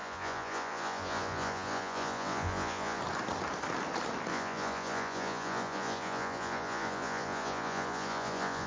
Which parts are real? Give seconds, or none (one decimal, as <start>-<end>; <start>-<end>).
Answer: 3.0-4.3

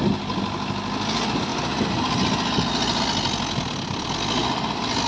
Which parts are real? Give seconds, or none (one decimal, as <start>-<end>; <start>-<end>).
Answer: 0.0-5.1